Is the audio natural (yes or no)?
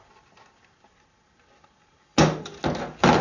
yes